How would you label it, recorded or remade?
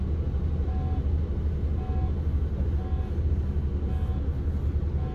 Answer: recorded